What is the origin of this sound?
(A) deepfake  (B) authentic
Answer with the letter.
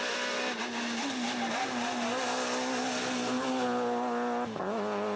B